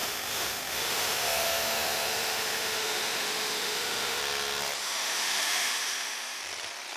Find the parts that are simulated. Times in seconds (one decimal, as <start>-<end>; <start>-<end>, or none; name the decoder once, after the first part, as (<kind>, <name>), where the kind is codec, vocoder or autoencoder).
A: 0.0-4.2 (autoencoder, DAC-VAE); 4.8-6.4